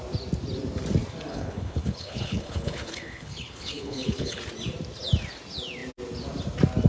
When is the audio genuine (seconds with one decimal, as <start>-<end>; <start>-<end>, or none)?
0.0-1.3; 4.4-6.9